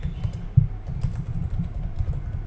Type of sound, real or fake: real